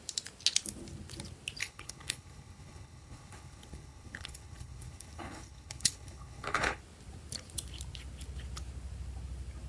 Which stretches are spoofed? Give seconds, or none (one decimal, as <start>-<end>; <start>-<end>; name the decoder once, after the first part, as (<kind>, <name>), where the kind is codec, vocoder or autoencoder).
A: 1.6-6.8 (codec, HILCodec)